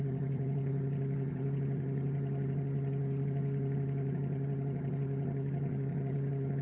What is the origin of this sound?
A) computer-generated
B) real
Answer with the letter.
A